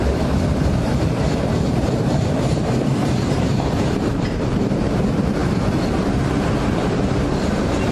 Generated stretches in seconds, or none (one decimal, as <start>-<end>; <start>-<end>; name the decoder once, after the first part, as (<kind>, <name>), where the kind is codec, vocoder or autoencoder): 0.0-7.9 (vocoder, BigVGAN v2)